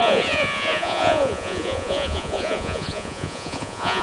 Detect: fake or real fake